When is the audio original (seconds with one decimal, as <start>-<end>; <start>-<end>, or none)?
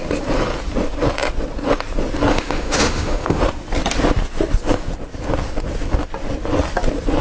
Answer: 0.0-2.3; 3.4-7.2